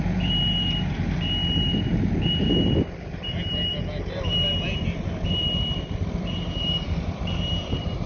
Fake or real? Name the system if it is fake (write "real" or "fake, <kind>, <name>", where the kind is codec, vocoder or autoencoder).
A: fake, vocoder, BigVGAN v2